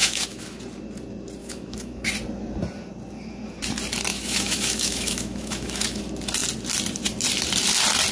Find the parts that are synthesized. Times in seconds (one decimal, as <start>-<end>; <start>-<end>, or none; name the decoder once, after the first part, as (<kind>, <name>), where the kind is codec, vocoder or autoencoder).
0.0-0.6 (autoencoder, DAC-VAE); 1.4-2.1; 4.1-6.0